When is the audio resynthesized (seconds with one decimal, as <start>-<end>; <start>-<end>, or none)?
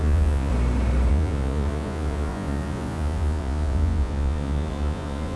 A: 0.0-0.5; 1.1-5.4